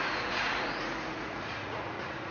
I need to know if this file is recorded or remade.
remade